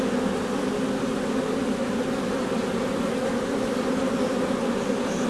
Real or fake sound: real